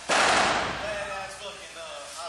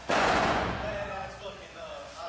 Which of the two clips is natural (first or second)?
first